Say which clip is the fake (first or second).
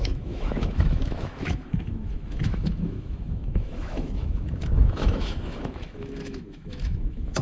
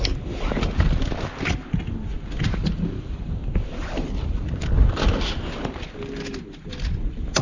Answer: first